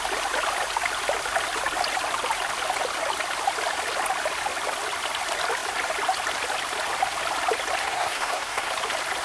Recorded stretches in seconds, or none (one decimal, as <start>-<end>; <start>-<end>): 0.0-7.8; 8.7-9.2